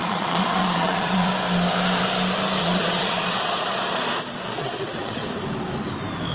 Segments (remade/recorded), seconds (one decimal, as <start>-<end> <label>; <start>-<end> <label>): 0.0-1.3 remade; 1.3-2.6 recorded; 2.6-5.2 remade; 5.2-6.3 recorded